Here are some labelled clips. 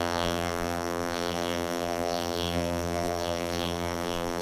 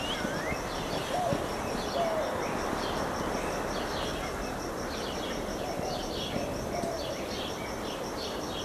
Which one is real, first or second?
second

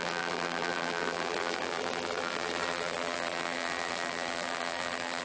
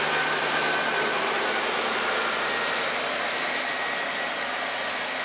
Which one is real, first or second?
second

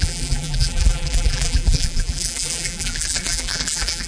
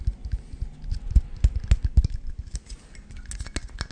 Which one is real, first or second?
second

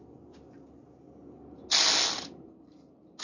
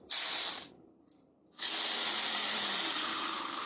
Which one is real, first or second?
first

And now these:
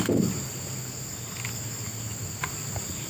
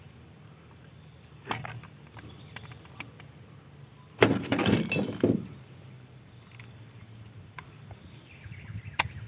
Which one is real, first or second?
first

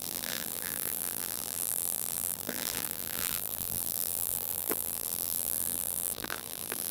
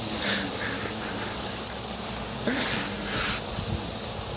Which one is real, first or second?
second